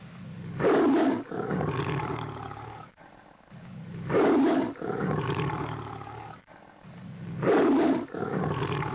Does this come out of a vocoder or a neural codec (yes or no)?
yes